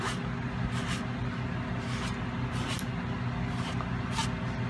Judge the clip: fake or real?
real